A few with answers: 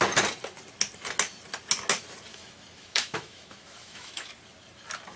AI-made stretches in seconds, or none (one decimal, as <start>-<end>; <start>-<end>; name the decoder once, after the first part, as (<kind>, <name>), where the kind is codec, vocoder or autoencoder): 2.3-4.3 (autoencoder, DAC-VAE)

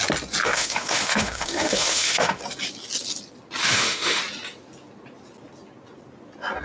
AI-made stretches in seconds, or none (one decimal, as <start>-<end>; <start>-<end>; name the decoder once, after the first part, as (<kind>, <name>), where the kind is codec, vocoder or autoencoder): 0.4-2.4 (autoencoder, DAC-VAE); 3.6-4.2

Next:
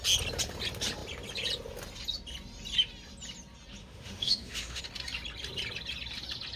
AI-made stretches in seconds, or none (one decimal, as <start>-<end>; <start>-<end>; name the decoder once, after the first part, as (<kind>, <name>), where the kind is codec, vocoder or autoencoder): 3.8-4.8 (autoencoder, DAC-VAE)

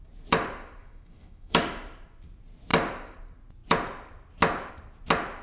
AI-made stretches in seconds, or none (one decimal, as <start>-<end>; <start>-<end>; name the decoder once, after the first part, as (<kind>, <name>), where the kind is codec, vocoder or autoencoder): 0.8-1.6 (autoencoder, DAC-VAE)

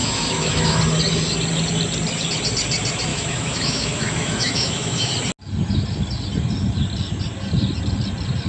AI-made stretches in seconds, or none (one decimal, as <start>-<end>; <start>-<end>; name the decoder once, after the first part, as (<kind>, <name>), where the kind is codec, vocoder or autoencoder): 0.0-0.8 (autoencoder, DAC-VAE); 3.1-5.1

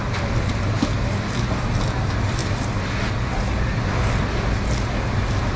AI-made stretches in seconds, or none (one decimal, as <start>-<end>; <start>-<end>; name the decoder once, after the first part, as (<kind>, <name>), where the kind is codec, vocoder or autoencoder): none